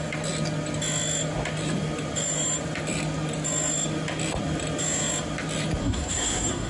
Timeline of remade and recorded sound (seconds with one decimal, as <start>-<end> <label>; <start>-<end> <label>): 0.0-5.8 recorded; 5.8-6.7 remade